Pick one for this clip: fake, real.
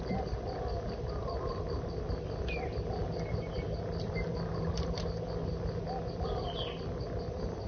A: real